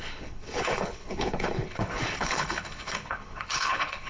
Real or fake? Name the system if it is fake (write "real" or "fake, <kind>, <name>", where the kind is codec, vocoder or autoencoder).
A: fake, codec, HILCodec